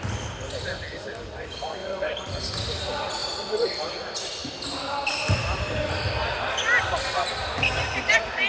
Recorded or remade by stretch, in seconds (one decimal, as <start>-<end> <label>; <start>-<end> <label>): 0.0-1.8 recorded; 1.8-2.5 remade; 2.5-8.5 recorded